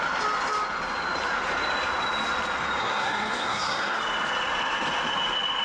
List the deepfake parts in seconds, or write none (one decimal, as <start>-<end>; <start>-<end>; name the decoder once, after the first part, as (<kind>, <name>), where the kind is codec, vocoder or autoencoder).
2.8-4.0 (codec, SNAC)